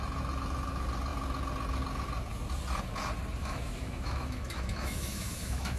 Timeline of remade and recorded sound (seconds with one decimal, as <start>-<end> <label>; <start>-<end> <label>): 0.0-3.4 recorded; 3.4-5.8 remade